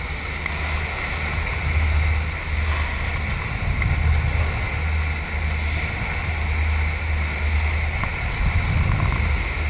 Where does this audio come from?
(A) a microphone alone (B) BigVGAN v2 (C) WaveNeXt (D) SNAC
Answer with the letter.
A